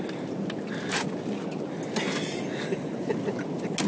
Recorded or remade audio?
recorded